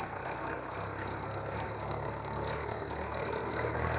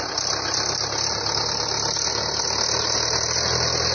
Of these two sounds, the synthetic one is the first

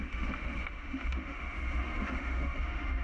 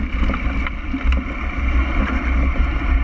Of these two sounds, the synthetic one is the first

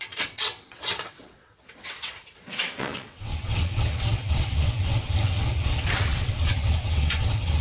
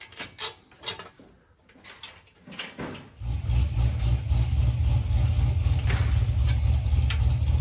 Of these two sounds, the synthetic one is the first